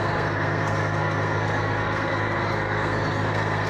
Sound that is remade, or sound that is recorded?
remade